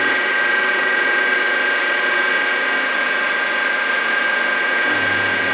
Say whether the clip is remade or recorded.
recorded